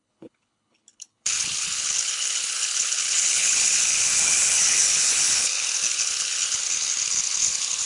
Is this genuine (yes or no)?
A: no